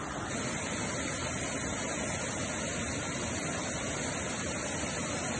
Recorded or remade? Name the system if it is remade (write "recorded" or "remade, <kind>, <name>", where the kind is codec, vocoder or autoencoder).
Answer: recorded